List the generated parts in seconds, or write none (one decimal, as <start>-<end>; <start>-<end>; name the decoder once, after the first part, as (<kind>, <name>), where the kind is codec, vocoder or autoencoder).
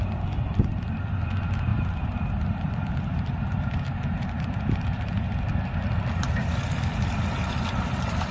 1.7-5.5 (vocoder, BigVGAN v2)